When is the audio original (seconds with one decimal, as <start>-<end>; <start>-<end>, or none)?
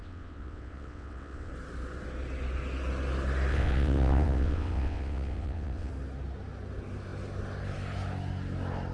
1.5-3.5; 5.9-8.9